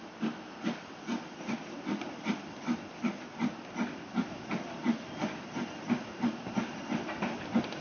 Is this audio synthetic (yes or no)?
no